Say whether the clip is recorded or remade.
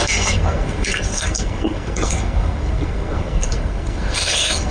remade